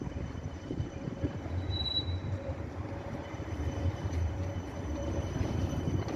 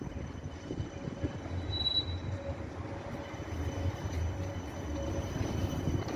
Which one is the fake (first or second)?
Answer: first